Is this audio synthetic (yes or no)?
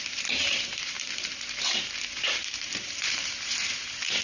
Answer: yes